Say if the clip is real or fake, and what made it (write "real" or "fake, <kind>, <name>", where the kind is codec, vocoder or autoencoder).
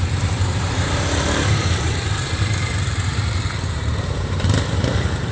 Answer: fake, vocoder, BigVGAN v2